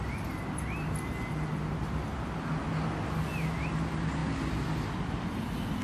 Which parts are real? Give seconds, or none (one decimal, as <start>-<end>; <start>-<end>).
0.0-5.8